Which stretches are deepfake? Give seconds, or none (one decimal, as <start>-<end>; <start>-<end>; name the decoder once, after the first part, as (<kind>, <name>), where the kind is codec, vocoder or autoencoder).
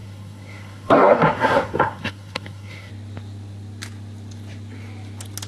0.0-2.9 (codec, SNAC)